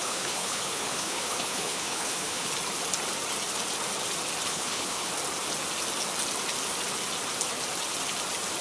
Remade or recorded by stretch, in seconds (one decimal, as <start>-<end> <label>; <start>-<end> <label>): 0.0-2.5 remade; 2.5-4.5 recorded; 4.5-5.1 remade; 5.1-8.6 recorded